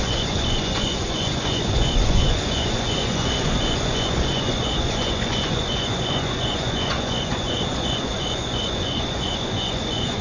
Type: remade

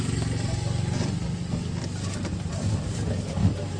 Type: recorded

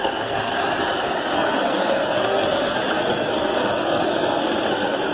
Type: remade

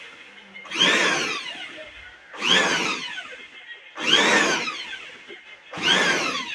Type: recorded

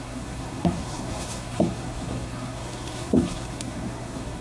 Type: remade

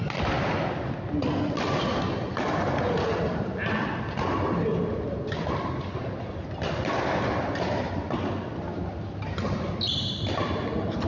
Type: recorded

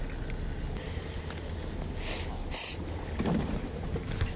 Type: recorded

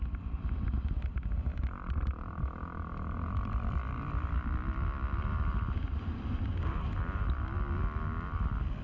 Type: recorded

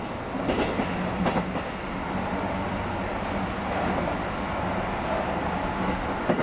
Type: recorded